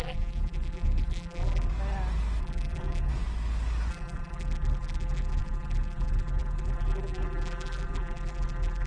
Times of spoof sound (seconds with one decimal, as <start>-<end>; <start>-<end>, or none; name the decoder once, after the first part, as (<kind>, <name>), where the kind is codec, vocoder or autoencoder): 0.0-1.7 (vocoder, BigVGAN v2); 2.4-3.1; 3.9-8.9